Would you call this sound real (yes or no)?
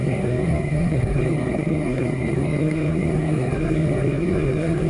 no